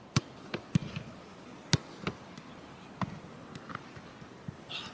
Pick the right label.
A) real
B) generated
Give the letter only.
A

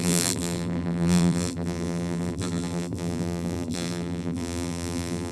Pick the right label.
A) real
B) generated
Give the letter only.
B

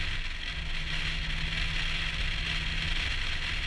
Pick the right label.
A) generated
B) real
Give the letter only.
B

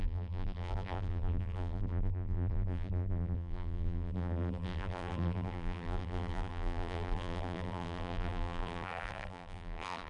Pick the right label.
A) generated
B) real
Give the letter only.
A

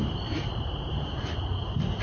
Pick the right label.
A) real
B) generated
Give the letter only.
B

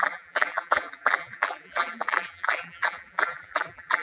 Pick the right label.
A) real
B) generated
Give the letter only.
B